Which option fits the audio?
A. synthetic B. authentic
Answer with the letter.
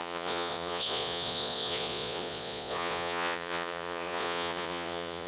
A